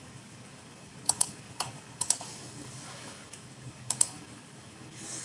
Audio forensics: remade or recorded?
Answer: remade